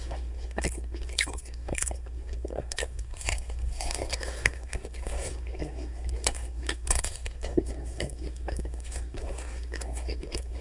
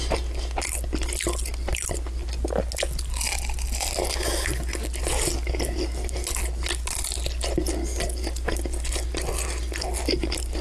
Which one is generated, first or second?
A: first